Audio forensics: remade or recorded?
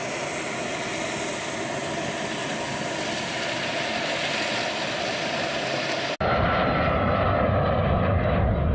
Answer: recorded